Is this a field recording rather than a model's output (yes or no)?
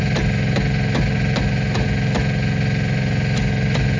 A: yes